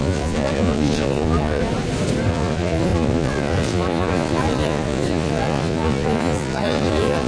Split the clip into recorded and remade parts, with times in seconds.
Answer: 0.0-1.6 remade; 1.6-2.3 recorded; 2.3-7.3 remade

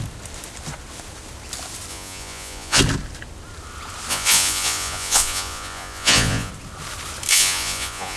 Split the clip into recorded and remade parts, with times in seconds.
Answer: 0.0-1.9 recorded; 1.9-2.8 remade; 2.8-4.1 recorded; 4.1-6.5 remade; 6.5-7.3 recorded; 7.3-8.2 remade